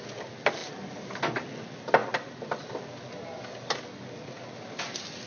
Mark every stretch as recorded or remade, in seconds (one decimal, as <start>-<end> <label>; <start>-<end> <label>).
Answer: 0.0-2.0 recorded; 2.0-2.7 remade; 2.7-5.3 recorded